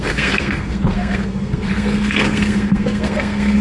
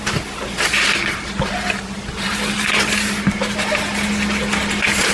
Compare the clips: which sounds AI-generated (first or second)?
first